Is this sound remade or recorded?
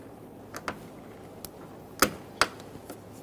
recorded